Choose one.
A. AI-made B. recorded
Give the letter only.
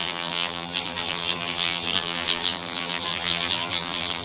A